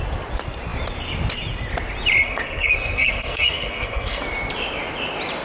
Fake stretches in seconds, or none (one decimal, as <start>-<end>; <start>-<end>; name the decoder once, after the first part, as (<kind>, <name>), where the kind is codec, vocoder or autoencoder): 2.2-4.2 (codec, SNAC)